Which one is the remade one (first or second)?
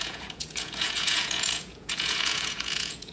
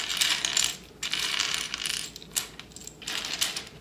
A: first